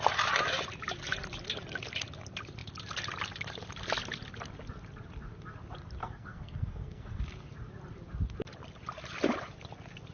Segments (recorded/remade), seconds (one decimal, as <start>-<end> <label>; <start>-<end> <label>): 0.0-6.0 recorded; 6.0-7.2 remade; 7.2-10.1 recorded

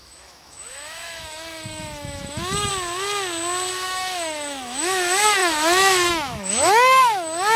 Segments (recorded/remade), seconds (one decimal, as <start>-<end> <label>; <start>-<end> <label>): 0.0-2.7 remade; 2.7-3.7 recorded; 3.7-7.6 remade

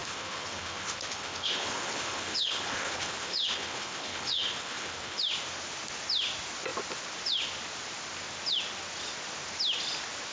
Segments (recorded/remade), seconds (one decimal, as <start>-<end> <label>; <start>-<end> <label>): 0.0-5.2 remade; 5.2-10.3 recorded

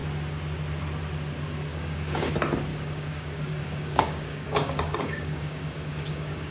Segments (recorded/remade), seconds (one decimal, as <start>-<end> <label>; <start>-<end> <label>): 0.0-1.7 recorded; 1.7-2.3 remade; 2.3-2.7 recorded; 2.7-6.5 remade

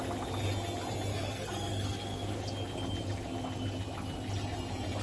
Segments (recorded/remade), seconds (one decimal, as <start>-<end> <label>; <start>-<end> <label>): 0.0-1.1 recorded; 1.1-2.4 remade; 2.4-5.0 recorded

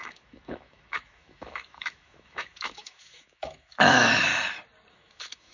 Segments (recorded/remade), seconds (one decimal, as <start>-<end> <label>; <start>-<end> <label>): 0.0-4.3 remade; 4.3-4.9 recorded; 4.9-5.5 remade